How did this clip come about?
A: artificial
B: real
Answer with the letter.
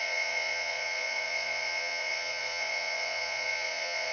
A